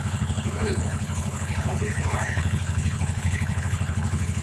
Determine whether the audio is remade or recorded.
remade